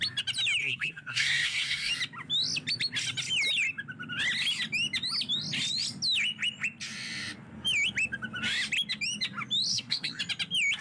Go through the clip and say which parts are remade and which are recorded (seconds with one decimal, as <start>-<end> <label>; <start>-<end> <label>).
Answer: 0.0-0.6 recorded; 0.6-1.9 remade; 1.9-9.7 recorded; 9.7-10.2 remade; 10.2-10.8 recorded